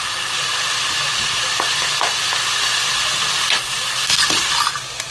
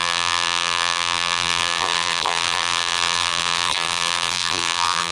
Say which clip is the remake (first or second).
second